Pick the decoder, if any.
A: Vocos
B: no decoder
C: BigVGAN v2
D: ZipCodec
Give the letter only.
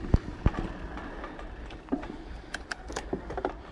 B